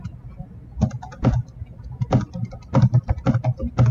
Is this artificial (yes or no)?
no